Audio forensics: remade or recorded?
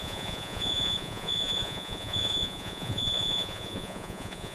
remade